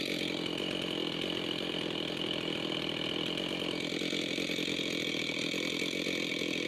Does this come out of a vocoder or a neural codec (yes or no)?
no